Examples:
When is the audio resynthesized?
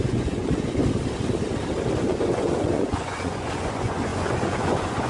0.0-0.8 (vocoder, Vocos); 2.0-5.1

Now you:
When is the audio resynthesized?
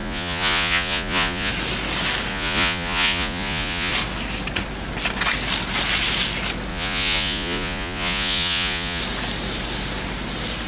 0.0-1.5 (vocoder, Vocos); 2.3-3.9; 6.7-9.0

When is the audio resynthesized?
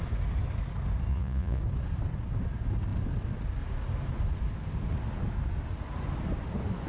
1.1-1.6 (vocoder, Vocos)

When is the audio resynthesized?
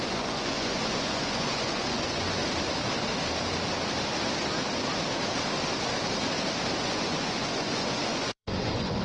0.0-2.4 (vocoder, Vocos); 6.8-9.0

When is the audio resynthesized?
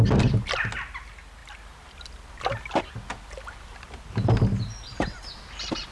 none